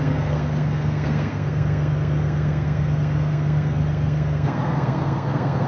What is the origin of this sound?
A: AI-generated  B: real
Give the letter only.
A